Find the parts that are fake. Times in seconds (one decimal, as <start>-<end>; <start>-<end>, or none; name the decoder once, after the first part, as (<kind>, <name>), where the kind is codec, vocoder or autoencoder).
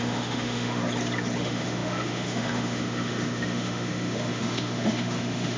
0.0-0.8 (autoencoder, DAC-VAE); 1.4-5.6